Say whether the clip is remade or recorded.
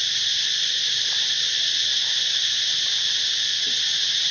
remade